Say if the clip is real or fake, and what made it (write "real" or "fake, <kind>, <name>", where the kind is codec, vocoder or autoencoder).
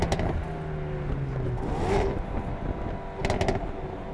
real